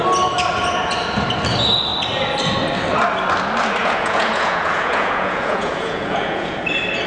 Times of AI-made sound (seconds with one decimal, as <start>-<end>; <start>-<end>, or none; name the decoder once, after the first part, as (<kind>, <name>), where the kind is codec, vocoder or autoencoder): 3.8-6.6 (vocoder, Vocos)